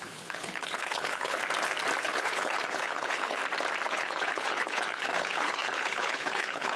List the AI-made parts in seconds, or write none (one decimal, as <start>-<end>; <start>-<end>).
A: 0.0-1.4; 2.0-3.4; 3.9-6.8